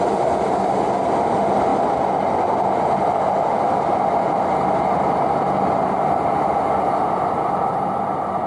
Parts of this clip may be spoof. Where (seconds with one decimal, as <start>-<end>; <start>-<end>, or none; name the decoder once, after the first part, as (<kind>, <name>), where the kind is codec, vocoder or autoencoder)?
none